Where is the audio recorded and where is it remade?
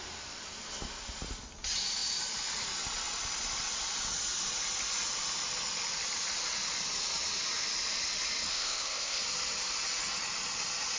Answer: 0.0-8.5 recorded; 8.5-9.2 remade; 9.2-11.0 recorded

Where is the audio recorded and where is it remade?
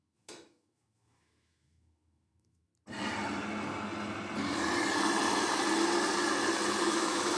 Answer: 0.0-2.7 remade; 2.7-6.8 recorded; 6.8-7.4 remade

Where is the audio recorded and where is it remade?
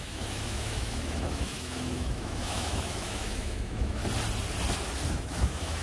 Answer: 0.0-4.0 remade; 4.0-5.1 recorded; 5.1-5.8 remade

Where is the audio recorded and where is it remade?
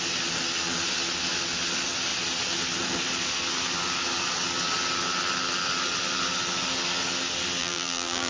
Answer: 0.0-7.6 recorded; 7.6-8.3 remade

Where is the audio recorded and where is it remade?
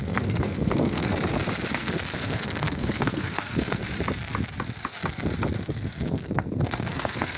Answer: 0.0-1.1 remade; 1.1-1.7 recorded; 1.7-3.8 remade; 3.8-5.6 recorded; 5.6-7.4 remade